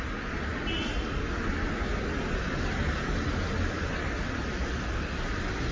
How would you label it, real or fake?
real